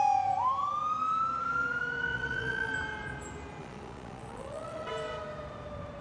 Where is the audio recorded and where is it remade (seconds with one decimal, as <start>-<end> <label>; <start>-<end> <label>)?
0.0-2.1 recorded; 2.1-2.7 remade; 2.7-3.6 recorded; 3.6-4.9 remade; 4.9-6.0 recorded